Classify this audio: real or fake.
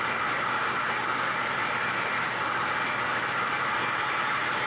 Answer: real